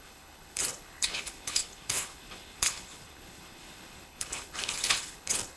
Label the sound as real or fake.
fake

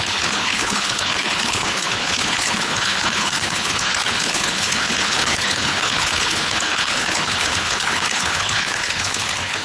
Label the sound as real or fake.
fake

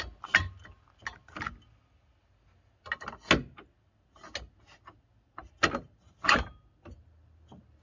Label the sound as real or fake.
real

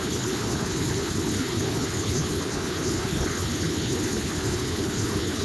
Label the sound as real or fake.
fake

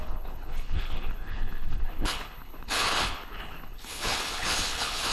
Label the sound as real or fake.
fake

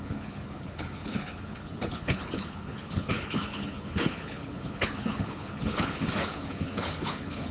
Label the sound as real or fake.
fake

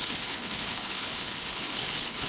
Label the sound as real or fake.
fake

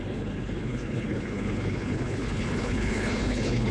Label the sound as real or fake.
fake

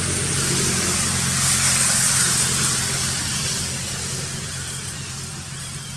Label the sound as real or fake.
real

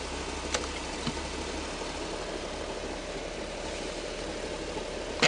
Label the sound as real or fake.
real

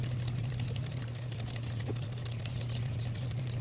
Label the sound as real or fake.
real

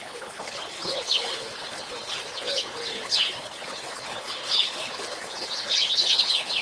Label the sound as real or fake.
fake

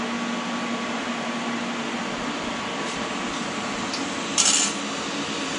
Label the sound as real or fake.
real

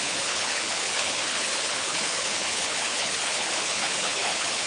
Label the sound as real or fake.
fake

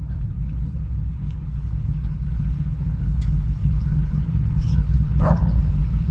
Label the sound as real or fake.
fake